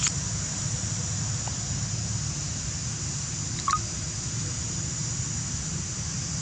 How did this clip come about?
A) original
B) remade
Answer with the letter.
A